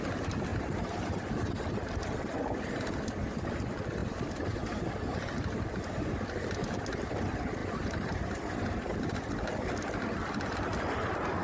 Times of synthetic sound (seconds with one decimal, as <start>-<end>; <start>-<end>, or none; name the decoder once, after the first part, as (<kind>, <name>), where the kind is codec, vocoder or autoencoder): 0.5-1.1 (vocoder, BigVGAN v2); 4.0-4.8; 7.6-9.0